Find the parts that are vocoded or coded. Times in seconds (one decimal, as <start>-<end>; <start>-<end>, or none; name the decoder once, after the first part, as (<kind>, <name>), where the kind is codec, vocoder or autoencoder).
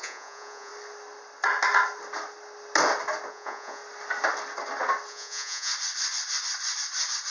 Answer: 0.0-0.7 (vocoder, Vocos); 3.3-3.8; 5.1-5.7